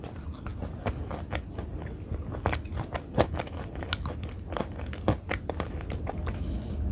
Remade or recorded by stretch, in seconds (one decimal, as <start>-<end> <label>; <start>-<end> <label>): 0.0-6.9 recorded